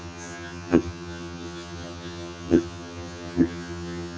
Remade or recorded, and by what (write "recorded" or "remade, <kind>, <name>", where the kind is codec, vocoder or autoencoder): remade, vocoder, HiFi-GAN